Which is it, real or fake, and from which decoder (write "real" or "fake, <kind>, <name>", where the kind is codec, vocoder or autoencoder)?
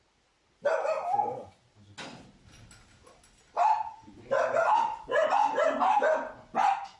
real